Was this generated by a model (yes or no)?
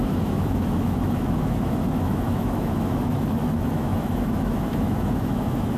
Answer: yes